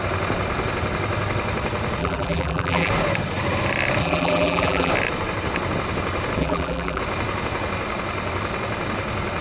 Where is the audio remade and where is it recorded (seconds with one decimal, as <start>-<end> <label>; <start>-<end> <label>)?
0.0-2.0 recorded; 2.0-2.9 remade; 2.9-4.0 recorded; 4.0-4.9 remade; 4.9-6.4 recorded; 6.4-7.0 remade; 7.0-9.4 recorded